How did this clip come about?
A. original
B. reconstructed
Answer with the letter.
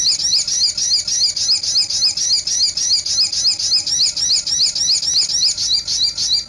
A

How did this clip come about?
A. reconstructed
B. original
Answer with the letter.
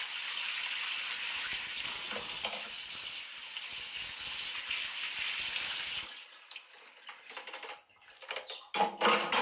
B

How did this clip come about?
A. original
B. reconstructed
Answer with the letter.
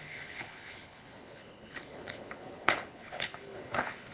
B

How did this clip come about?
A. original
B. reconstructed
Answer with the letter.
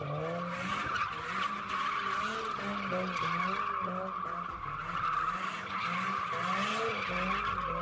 A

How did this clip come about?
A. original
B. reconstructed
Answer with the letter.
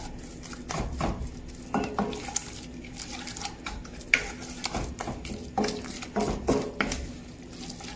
A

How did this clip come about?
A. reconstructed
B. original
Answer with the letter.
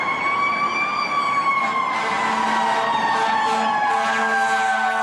B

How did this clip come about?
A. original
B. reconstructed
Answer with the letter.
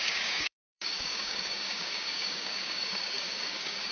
B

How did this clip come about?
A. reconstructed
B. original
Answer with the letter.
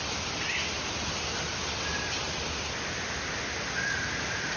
B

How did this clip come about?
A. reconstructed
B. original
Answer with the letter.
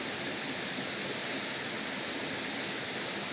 B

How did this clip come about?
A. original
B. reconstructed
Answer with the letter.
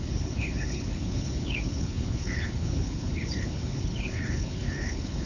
B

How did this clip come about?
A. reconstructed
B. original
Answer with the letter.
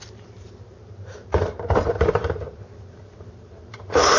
A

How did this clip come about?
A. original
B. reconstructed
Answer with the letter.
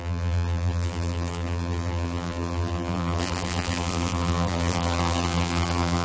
B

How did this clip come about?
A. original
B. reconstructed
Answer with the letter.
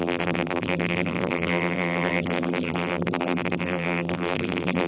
B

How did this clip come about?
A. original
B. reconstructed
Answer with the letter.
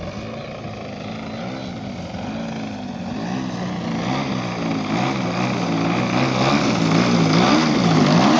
A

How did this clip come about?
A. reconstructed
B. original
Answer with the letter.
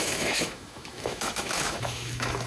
A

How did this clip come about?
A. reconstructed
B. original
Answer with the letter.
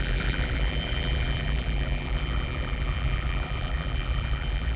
A